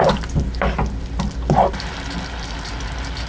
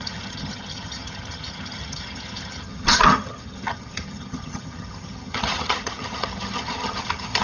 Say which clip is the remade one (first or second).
second